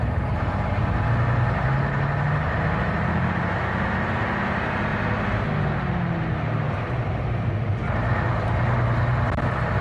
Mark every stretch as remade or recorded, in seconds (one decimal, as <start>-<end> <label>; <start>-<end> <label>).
0.0-9.8 recorded